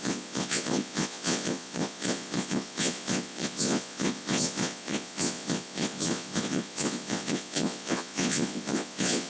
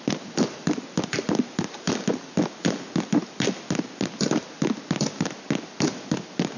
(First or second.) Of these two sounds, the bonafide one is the second